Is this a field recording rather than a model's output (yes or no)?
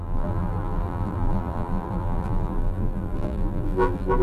no